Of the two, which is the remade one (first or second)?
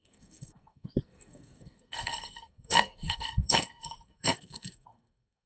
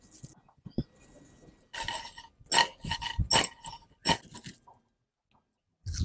first